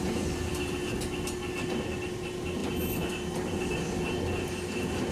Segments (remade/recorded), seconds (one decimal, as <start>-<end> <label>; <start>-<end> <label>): 0.0-5.1 recorded